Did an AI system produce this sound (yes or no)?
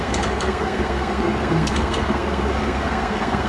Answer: yes